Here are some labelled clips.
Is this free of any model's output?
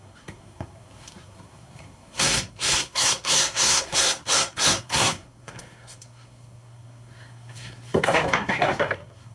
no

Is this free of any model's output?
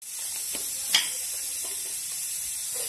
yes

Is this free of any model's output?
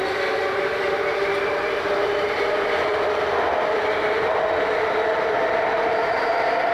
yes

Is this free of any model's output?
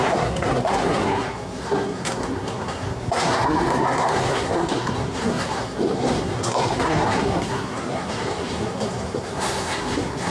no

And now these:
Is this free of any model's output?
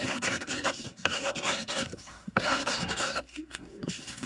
no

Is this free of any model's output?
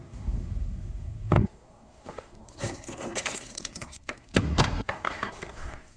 no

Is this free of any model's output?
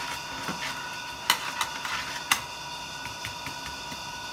yes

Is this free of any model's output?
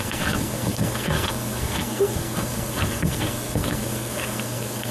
no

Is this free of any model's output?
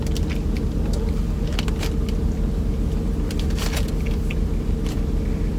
yes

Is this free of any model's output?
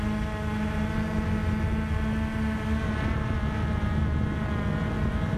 yes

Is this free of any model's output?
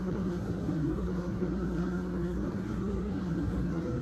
no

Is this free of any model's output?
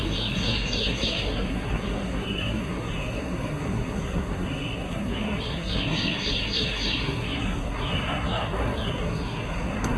no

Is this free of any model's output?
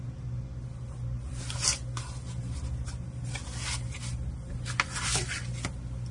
yes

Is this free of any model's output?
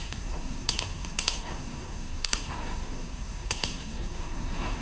no